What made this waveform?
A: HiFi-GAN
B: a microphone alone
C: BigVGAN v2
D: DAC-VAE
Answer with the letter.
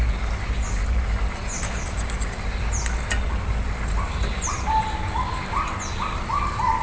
B